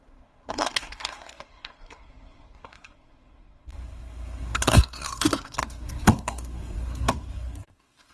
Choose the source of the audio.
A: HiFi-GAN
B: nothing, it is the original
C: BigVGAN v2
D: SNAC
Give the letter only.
D